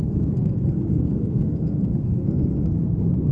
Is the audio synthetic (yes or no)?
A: yes